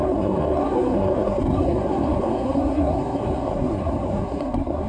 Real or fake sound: fake